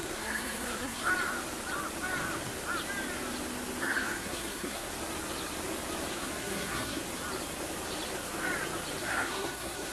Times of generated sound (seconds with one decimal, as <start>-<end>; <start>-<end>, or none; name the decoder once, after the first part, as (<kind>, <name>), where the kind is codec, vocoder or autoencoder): 0.0-1.1 (codec, SNAC); 3.8-4.9; 6.1-7.0; 9.0-9.9